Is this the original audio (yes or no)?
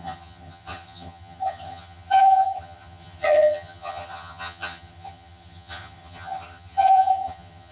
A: no